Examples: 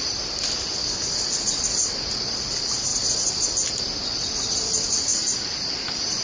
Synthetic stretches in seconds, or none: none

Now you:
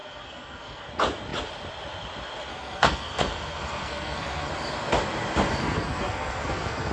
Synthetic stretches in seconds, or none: 0.0-0.9 (codec, SNAC); 2.5-4.5; 5.6-6.9